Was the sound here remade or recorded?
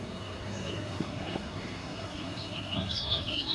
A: remade